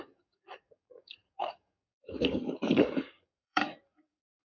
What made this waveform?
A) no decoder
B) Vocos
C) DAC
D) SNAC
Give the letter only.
C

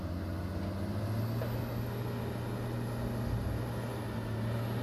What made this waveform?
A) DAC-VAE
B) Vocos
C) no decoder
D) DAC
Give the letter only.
C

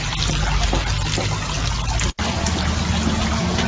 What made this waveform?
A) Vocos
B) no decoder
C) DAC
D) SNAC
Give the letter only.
B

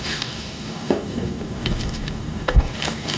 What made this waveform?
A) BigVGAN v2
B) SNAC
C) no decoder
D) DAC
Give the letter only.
D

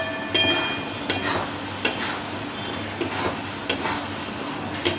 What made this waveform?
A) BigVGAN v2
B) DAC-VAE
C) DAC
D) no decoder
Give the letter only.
D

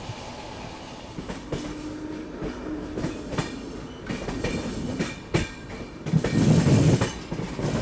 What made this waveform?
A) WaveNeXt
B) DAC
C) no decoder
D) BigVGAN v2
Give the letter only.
C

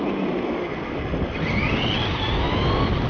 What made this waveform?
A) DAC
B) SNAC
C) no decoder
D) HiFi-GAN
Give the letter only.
C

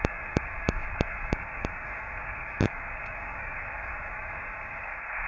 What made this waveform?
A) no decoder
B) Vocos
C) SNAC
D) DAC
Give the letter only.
D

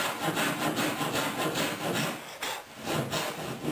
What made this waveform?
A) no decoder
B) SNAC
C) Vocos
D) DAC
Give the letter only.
A